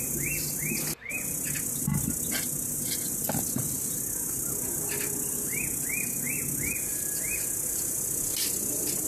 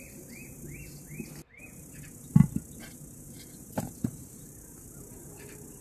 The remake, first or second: second